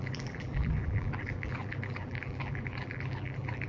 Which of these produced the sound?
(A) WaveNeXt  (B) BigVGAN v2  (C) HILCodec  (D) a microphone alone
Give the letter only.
B